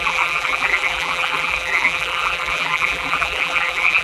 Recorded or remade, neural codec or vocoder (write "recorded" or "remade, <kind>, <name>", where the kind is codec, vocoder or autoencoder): remade, vocoder, BigVGAN v2